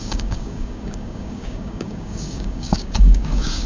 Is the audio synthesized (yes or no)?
yes